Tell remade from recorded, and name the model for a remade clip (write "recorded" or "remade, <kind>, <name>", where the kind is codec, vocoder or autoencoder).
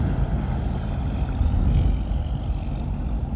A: recorded